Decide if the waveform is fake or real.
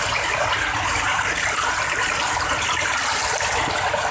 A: fake